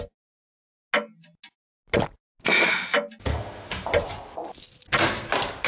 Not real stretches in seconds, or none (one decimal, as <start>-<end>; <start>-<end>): 3.3-3.9